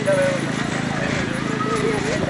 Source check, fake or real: fake